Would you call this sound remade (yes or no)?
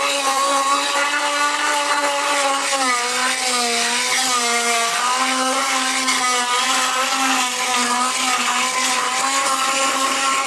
no